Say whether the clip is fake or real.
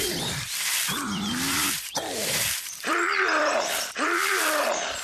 fake